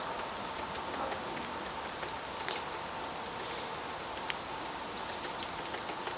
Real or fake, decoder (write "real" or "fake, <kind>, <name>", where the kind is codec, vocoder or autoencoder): real